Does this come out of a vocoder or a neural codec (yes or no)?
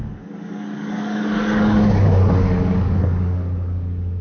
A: yes